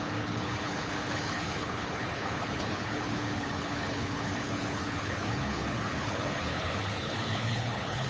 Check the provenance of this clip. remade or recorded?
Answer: remade